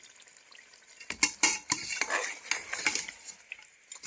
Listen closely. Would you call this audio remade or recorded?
recorded